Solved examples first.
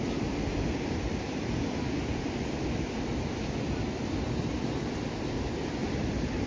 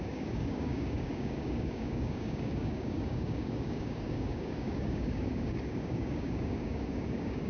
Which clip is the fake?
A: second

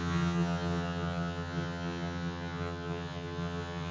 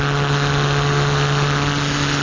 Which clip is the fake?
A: first